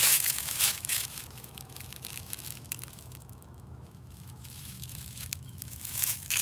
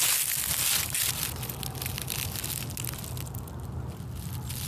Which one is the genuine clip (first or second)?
second